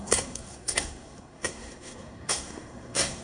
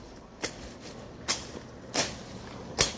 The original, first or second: second